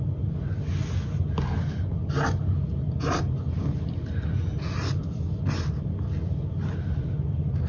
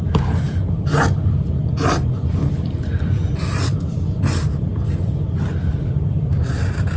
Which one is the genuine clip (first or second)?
first